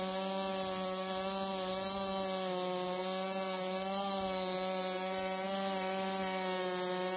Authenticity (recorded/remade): recorded